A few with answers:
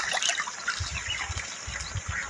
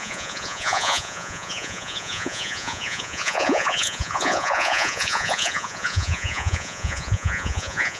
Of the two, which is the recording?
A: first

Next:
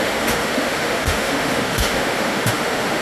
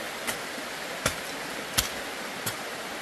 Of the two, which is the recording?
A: second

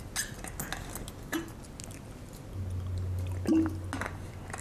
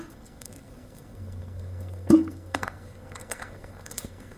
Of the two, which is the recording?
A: first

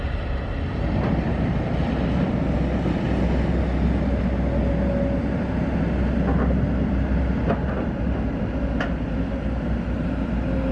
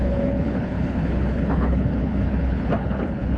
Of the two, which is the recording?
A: first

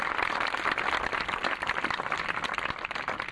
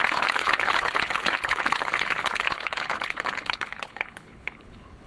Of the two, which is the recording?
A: first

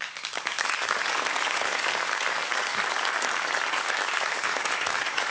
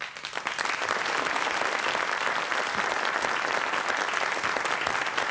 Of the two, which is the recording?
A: second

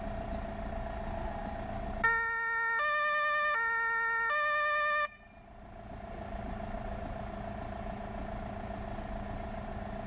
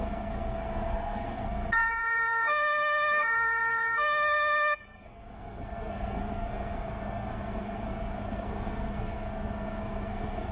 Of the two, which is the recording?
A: first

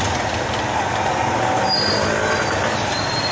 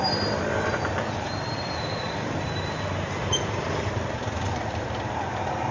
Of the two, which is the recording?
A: first